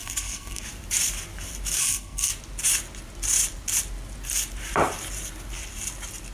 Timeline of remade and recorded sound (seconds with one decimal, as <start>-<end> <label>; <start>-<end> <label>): 0.0-0.6 remade; 0.6-1.8 recorded; 1.8-2.3 remade; 2.3-6.3 recorded